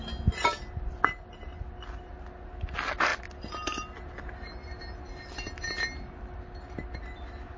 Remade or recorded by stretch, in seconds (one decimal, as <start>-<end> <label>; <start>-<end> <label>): 0.0-7.6 recorded